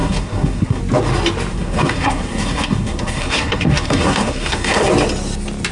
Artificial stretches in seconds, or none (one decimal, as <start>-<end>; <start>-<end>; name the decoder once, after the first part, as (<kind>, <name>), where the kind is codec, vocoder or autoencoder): 0.0-0.8 (codec, SNAC); 1.5-4.9